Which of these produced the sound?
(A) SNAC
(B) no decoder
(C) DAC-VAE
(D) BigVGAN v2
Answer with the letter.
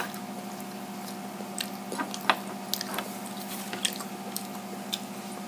B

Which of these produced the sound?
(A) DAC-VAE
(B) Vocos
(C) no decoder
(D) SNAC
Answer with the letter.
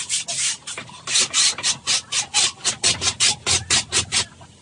C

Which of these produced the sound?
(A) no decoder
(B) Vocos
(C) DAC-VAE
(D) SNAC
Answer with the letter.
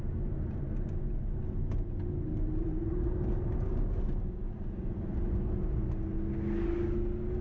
A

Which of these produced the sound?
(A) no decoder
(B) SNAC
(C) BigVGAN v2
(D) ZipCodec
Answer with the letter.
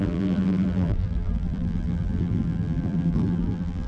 C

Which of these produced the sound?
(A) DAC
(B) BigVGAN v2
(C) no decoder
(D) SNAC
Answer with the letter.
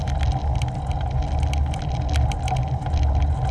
C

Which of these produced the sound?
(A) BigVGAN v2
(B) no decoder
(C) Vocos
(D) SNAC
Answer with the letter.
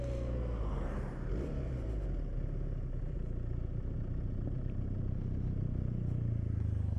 B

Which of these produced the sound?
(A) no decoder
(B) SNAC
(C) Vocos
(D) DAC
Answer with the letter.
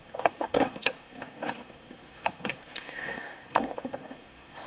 B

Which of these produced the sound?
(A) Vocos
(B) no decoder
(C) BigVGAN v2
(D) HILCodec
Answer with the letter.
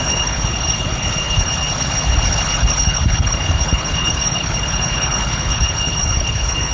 D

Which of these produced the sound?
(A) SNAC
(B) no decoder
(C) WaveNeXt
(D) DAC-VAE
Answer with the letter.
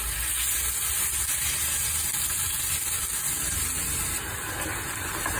B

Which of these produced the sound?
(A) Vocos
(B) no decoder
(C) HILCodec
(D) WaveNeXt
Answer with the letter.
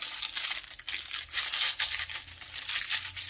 B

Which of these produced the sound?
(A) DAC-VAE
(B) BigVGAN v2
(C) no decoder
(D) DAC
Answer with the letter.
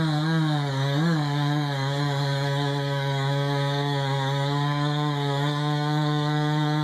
D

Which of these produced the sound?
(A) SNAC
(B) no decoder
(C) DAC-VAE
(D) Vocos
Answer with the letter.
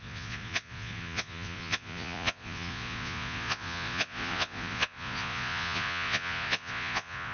D